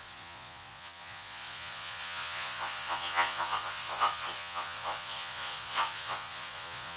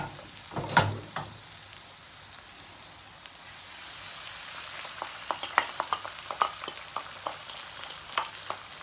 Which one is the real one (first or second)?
second